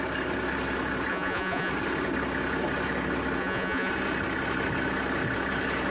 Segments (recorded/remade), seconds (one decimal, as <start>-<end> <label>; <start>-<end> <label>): 0.0-1.1 recorded; 1.1-1.7 remade; 1.7-3.4 recorded; 3.4-3.9 remade; 3.9-5.9 recorded